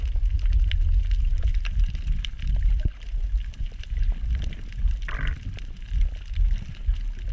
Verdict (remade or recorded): recorded